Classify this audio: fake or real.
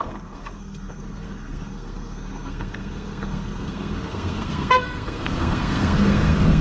fake